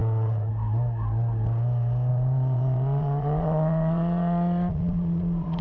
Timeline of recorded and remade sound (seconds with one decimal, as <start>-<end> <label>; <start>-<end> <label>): 0.0-0.5 remade; 0.5-2.1 recorded; 2.1-5.6 remade